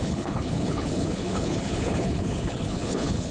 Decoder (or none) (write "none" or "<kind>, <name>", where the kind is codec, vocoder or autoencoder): codec, HILCodec